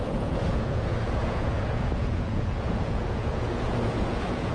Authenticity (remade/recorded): remade